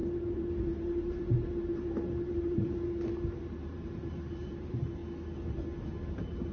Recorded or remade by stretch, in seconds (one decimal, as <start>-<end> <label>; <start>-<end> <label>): 0.0-5.0 remade; 5.0-6.1 recorded; 6.1-6.5 remade

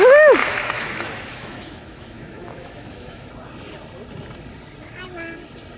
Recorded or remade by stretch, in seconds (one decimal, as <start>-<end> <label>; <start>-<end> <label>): 0.0-0.4 recorded; 0.4-3.3 remade; 3.3-5.8 recorded

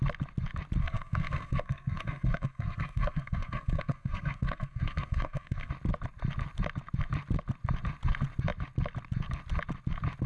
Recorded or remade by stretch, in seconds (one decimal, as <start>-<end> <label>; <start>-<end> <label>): 0.0-0.8 recorded; 0.8-5.7 remade; 5.7-10.3 recorded

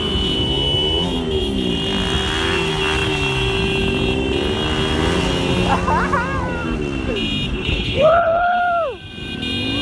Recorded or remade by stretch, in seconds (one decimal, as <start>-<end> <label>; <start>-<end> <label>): 0.0-7.5 recorded; 7.5-8.6 remade; 8.6-9.8 recorded

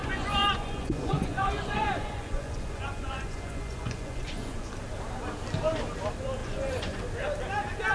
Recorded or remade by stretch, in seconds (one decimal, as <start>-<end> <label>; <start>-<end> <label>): 0.0-4.7 remade; 4.7-6.4 recorded; 6.4-7.0 remade; 7.0-7.9 recorded

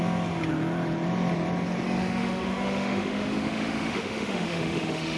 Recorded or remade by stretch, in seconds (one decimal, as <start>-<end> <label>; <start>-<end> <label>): 0.0-2.0 recorded; 2.0-5.2 remade

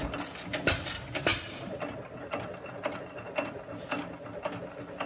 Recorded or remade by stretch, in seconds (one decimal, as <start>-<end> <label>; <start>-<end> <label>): 0.0-5.1 recorded

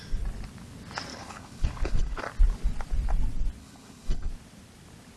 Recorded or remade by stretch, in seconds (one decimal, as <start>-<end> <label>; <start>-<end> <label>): 0.0-1.1 recorded; 1.1-2.2 remade; 2.2-3.6 recorded; 3.6-4.3 remade; 4.3-5.2 recorded